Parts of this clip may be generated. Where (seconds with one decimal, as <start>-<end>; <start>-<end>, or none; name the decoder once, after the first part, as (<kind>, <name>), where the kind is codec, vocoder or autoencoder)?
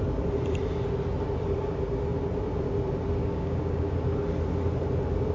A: 3.2-3.9 (codec, DAC)